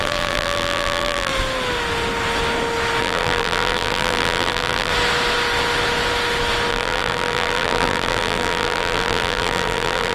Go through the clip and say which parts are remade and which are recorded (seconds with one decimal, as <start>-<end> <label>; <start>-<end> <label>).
0.0-1.3 remade; 1.3-3.0 recorded; 3.0-4.9 remade; 4.9-6.7 recorded; 6.7-10.1 remade